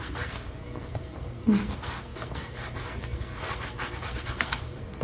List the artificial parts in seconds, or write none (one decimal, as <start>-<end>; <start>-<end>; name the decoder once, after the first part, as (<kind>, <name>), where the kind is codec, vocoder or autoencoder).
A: 0.0-5.0 (codec, SNAC)